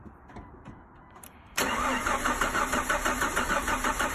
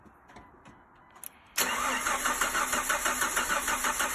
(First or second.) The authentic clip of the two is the second